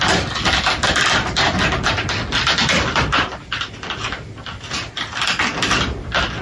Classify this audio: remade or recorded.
recorded